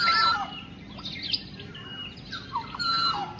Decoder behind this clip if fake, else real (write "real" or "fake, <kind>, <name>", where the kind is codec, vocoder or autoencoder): real